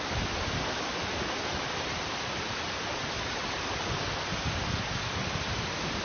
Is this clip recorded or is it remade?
remade